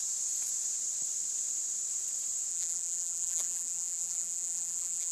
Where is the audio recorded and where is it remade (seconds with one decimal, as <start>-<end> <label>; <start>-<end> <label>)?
0.0-2.5 recorded; 2.5-5.1 remade